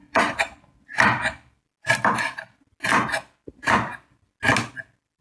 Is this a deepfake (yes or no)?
no